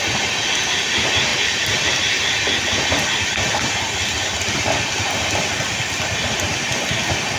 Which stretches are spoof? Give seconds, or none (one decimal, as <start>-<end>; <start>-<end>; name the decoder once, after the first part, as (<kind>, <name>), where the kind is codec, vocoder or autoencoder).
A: none